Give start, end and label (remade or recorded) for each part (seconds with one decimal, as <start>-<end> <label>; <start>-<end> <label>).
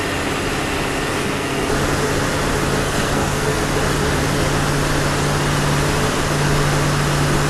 0.0-1.1 recorded; 1.1-1.7 remade; 1.7-2.8 recorded; 2.8-3.6 remade; 3.6-7.5 recorded